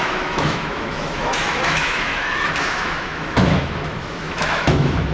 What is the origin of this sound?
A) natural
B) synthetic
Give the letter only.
B